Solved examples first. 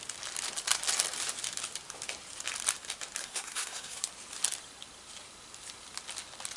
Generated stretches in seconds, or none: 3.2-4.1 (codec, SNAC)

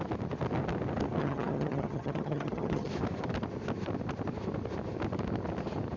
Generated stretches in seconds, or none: 1.2-2.9 (vocoder, HiFi-GAN)

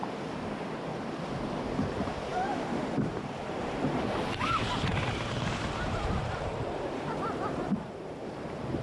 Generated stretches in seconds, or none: 0.0-0.9 (vocoder, BigVGAN v2); 1.6-8.8

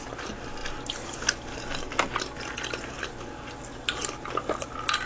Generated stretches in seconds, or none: none

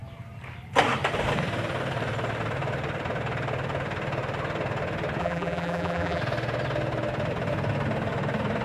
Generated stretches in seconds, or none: 5.2-6.2 (vocoder, BigVGAN v2)